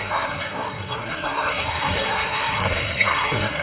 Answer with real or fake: fake